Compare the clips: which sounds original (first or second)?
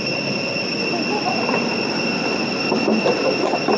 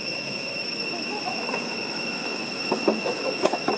first